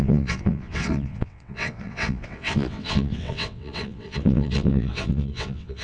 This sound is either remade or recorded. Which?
remade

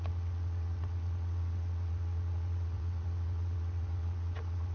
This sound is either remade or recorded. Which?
remade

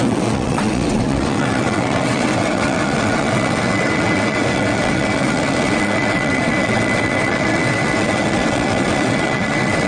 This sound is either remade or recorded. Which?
remade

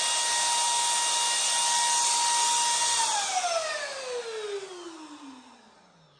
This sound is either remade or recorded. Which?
recorded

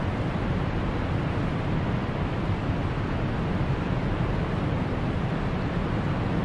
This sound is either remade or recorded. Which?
recorded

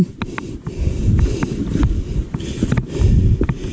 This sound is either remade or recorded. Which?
recorded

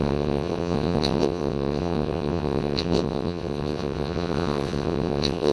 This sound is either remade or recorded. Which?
remade